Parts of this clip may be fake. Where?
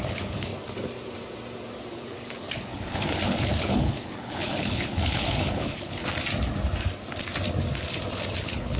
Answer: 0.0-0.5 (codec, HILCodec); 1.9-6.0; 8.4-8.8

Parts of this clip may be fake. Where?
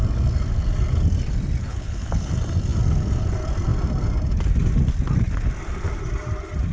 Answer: 1.6-2.3 (codec, HILCodec)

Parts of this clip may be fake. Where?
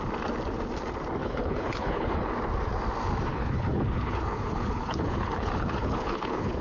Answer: 1.2-2.3 (codec, HILCodec); 3.3-6.6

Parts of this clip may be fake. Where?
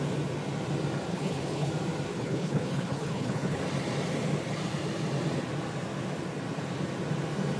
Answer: 1.1-1.7 (codec, HILCodec); 2.1-3.6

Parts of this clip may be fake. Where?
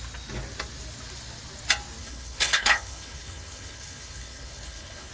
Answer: 2.0-5.1 (codec, HILCodec)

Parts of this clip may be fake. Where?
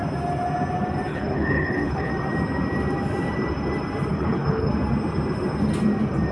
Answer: 1.1-2.1 (codec, HILCodec); 4.1-4.7